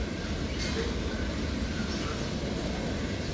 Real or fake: real